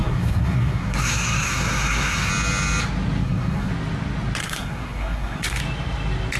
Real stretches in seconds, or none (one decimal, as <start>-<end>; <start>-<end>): 2.3-3.2; 3.7-4.4; 5.6-6.4